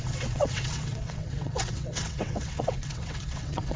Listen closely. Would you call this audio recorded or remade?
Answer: remade